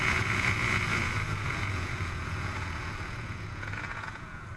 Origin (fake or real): fake